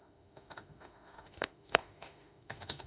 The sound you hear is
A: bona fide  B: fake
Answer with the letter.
B